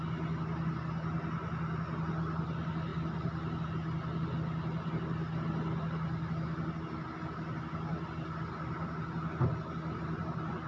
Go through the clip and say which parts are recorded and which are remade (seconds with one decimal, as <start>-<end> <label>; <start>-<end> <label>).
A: 0.0-10.7 recorded